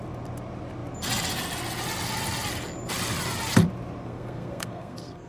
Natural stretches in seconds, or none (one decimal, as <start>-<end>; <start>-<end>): 0.0-4.0